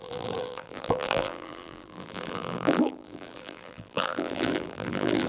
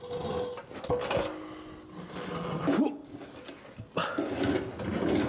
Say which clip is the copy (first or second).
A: first